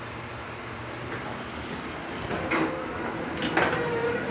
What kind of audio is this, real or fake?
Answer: real